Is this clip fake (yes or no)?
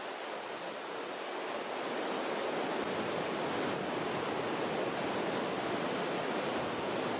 no